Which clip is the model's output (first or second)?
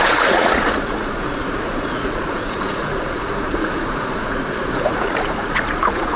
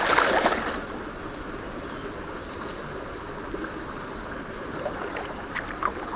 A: first